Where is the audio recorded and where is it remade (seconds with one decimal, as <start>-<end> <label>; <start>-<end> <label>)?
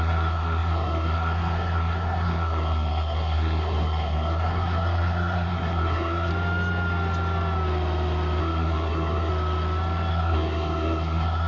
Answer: 0.0-6.3 remade; 6.3-8.4 recorded; 8.4-9.3 remade; 9.3-10.1 recorded; 10.1-11.5 remade